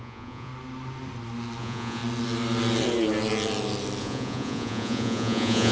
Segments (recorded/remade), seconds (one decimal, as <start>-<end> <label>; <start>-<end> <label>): 0.0-0.5 remade; 0.5-1.6 recorded; 1.6-2.0 remade; 2.0-4.0 recorded; 4.0-5.7 remade